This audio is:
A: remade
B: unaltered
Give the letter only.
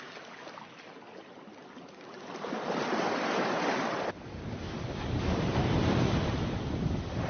B